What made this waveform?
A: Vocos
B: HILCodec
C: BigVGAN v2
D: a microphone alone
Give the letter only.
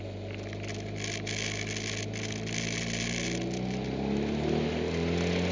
D